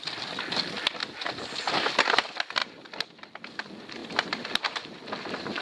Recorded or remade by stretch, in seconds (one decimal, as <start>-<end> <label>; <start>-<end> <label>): 0.0-2.6 recorded; 2.6-3.5 remade; 3.5-4.0 recorded; 4.0-4.6 remade; 4.6-5.6 recorded

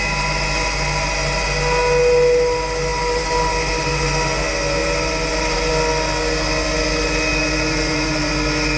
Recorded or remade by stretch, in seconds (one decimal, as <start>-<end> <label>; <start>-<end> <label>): 0.0-2.9 recorded; 2.9-4.0 remade; 4.0-4.8 recorded; 4.8-5.7 remade; 5.7-7.3 recorded; 7.3-8.3 remade; 8.3-8.8 recorded

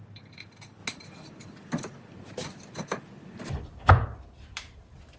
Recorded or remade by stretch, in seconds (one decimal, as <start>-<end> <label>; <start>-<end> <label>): 0.0-0.8 remade; 0.8-3.9 recorded; 3.9-5.2 remade

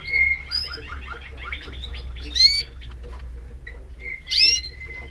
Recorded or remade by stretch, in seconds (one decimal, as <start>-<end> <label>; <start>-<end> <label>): 0.0-5.1 recorded

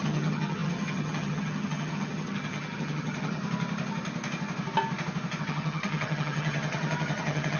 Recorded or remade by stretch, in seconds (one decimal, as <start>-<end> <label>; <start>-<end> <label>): 0.0-3.4 remade; 3.4-5.4 recorded; 5.4-7.6 remade

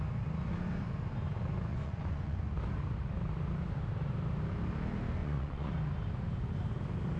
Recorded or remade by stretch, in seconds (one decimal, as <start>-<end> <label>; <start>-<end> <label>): 0.0-1.7 recorded; 1.7-2.6 remade; 2.6-5.2 recorded; 5.2-5.7 remade; 5.7-7.2 recorded